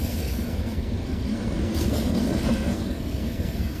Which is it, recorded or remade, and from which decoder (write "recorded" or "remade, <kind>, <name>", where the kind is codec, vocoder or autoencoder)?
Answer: remade, codec, SNAC